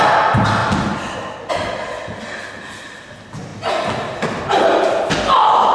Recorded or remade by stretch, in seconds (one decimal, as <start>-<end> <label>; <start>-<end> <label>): 0.0-5.7 recorded